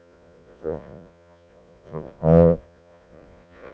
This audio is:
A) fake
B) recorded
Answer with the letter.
A